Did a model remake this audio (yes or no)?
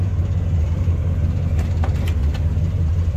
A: yes